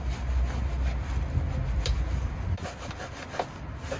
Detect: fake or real real